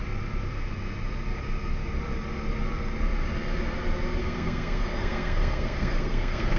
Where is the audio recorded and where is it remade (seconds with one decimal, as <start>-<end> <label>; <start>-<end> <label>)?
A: 0.0-4.2 recorded; 4.2-6.6 remade